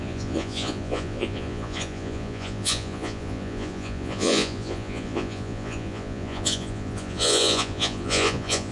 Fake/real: fake